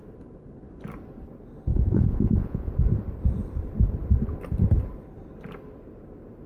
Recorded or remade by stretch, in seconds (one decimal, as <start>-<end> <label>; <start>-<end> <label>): 0.0-1.7 recorded; 1.7-2.7 remade; 2.7-6.5 recorded